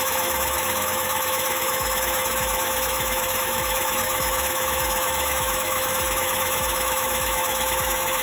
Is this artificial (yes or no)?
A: yes